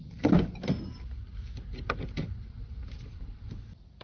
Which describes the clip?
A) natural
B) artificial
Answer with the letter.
A